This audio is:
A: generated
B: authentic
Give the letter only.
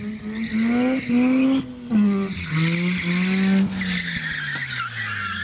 B